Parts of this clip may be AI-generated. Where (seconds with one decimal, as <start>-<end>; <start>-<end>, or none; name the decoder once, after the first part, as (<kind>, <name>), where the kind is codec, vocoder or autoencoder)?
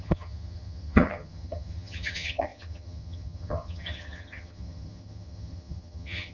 0.0-6.3 (vocoder, HiFi-GAN)